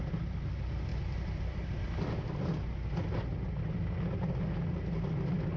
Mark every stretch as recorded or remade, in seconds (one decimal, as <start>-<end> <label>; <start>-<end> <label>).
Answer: 0.0-5.6 recorded